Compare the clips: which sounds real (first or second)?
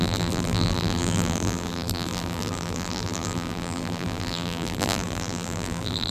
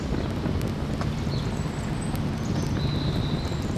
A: second